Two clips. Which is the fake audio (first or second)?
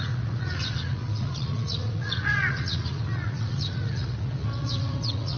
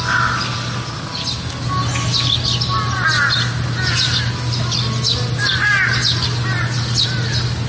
first